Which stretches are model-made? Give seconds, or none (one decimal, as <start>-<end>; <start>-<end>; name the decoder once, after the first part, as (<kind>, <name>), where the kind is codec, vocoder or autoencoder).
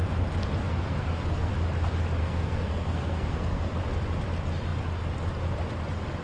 0.6-1.5 (codec, SNAC); 2.2-3.7